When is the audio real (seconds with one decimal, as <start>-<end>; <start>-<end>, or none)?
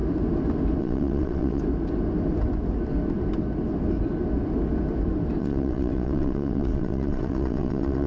0.0-0.8; 1.6-5.4